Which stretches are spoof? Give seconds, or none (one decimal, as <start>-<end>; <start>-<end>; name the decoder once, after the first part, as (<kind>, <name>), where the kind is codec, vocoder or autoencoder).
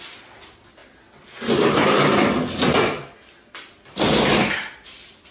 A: none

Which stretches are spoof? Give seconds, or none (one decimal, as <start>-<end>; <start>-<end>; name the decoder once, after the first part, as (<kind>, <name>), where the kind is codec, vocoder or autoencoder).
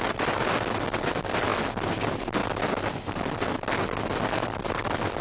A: none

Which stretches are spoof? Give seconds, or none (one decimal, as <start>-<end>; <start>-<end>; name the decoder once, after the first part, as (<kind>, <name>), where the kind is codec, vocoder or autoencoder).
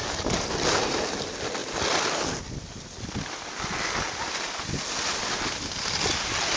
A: 0.0-0.5 (codec, DAC)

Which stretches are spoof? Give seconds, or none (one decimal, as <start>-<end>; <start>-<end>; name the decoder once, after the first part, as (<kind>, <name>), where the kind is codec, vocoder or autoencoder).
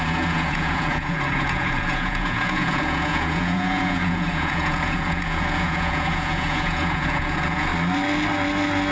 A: 0.0-7.7 (vocoder, Vocos)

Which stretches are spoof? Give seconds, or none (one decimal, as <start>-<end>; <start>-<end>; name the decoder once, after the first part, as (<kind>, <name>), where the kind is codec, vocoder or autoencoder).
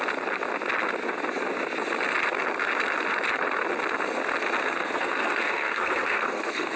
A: 4.6-6.8 (codec, SNAC)